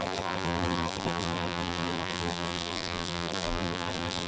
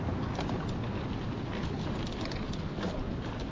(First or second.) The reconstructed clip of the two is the first